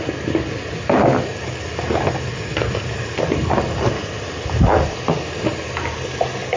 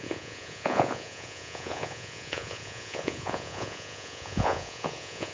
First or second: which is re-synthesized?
second